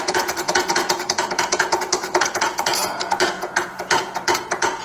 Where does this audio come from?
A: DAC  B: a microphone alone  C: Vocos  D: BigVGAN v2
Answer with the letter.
C